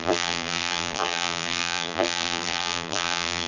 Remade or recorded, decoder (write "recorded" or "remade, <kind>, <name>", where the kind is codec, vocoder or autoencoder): remade, vocoder, BigVGAN v2